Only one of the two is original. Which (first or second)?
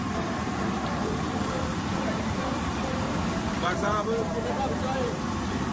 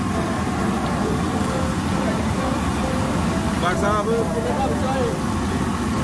second